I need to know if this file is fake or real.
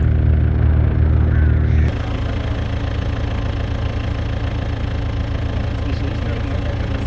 real